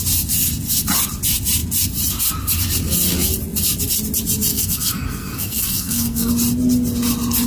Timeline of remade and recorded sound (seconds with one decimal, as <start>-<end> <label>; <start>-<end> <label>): 0.0-4.5 recorded; 4.5-6.3 remade; 6.3-7.5 recorded

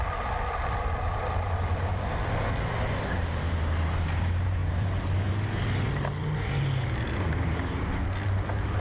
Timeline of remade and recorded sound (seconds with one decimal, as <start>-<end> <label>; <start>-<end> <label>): 0.0-8.8 recorded

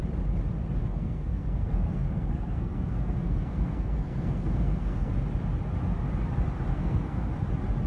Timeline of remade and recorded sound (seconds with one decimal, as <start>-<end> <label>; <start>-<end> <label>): 0.0-0.8 recorded; 0.8-5.1 remade; 5.1-6.7 recorded; 6.7-7.3 remade; 7.3-7.9 recorded

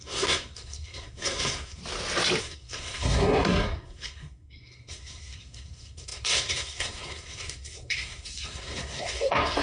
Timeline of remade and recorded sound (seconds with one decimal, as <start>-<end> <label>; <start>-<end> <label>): 0.0-1.8 remade; 1.8-2.4 recorded; 2.4-9.6 remade

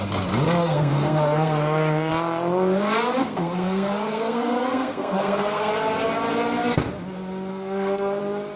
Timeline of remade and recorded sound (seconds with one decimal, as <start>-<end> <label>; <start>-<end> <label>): 0.0-0.6 recorded; 0.6-2.1 remade; 2.1-3.2 recorded; 3.2-5.7 remade; 5.7-7.5 recorded; 7.5-8.2 remade; 8.2-8.6 recorded

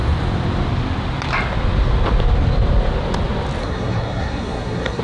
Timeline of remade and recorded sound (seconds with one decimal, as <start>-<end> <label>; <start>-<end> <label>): 0.0-3.6 recorded; 3.6-5.0 remade